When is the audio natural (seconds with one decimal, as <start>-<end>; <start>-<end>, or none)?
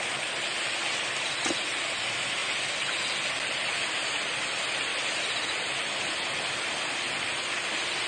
0.0-8.1